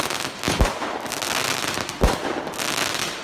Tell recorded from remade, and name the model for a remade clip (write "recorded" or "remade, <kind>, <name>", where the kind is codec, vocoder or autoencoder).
recorded